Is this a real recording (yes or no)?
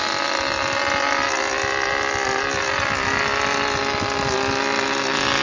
yes